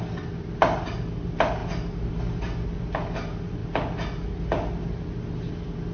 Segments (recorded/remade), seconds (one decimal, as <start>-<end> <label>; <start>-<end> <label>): 0.0-3.6 remade; 3.6-5.5 recorded; 5.5-5.9 remade